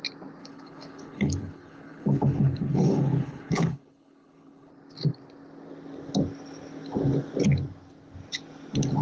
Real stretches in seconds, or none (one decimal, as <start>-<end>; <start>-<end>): 0.0-0.4; 4.7-9.0